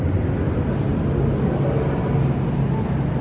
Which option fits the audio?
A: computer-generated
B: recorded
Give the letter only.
B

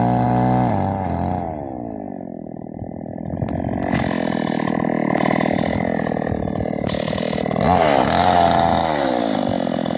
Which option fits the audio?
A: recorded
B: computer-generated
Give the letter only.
A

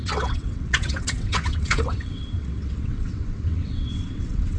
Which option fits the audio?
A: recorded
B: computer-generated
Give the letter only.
B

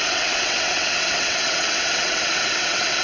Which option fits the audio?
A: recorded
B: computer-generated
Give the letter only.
B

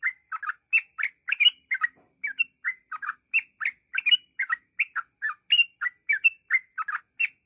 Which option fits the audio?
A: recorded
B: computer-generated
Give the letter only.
A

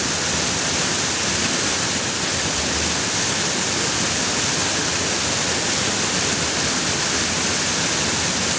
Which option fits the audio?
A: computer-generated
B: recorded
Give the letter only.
B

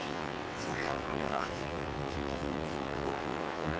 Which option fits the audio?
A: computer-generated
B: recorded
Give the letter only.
A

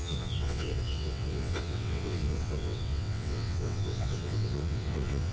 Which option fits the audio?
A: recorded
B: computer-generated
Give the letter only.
B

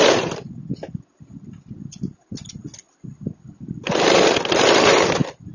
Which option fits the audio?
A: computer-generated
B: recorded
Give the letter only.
B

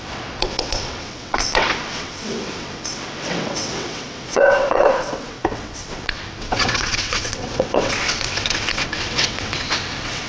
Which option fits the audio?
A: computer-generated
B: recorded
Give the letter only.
A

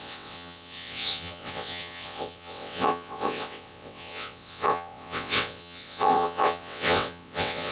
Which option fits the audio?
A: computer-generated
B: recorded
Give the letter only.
A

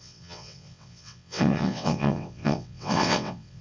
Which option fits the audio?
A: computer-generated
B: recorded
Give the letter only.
A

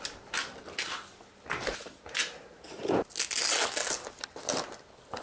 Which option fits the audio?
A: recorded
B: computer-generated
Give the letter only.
A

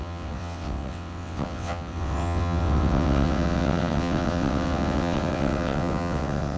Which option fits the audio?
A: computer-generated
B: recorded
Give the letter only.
A